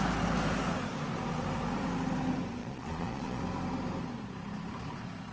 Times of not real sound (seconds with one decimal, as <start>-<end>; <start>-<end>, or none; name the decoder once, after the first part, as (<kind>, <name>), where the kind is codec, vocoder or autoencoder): 2.6-3.4 (vocoder, Vocos)